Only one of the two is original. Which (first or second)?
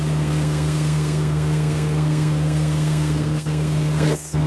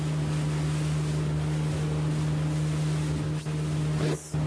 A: second